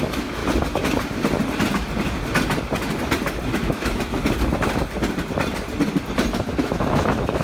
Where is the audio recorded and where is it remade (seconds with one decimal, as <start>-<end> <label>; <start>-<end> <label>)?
0.0-0.4 remade; 0.4-3.5 recorded; 3.5-4.2 remade; 4.2-6.6 recorded; 6.6-7.4 remade